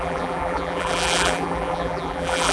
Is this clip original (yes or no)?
no